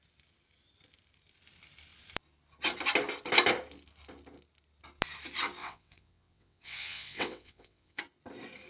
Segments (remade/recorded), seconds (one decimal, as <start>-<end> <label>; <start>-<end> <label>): 0.0-5.6 recorded; 5.6-8.0 remade; 8.0-8.7 recorded